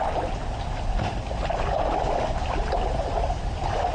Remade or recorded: recorded